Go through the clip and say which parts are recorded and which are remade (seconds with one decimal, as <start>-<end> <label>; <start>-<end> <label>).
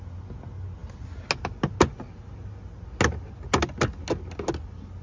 0.0-5.0 recorded